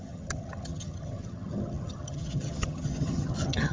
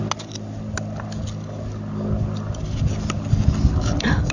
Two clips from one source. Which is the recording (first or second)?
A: second